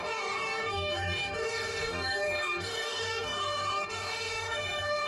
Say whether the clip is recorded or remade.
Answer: remade